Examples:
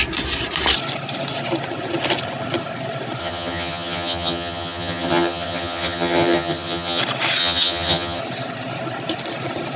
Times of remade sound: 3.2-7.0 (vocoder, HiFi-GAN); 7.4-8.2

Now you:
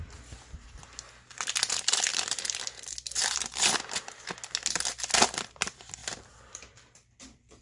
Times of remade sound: 2.1-4.0 (vocoder, BigVGAN v2); 6.0-7.6

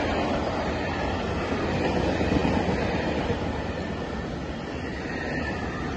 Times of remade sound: none

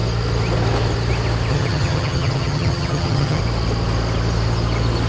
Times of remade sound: 1.5-3.4 (vocoder, HiFi-GAN)

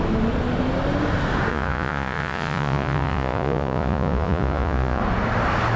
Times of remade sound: 1.5-5.0 (vocoder, Vocos)

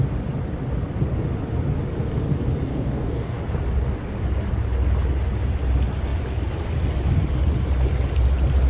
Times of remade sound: 2.7-3.4 (codec, DAC)

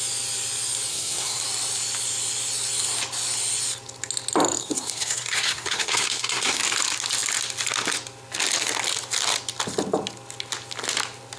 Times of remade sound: 0.9-1.4 (codec, SNAC); 4.6-6.6